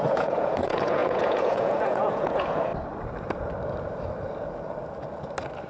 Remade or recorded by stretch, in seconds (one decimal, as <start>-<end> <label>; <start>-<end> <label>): 0.0-2.7 remade; 2.7-5.7 recorded